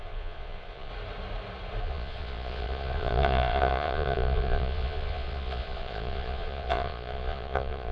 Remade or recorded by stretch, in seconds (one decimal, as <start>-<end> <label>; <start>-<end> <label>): 0.0-0.9 remade; 0.9-1.8 recorded; 1.8-7.9 remade